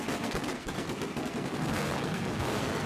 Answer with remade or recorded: remade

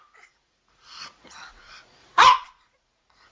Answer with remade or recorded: remade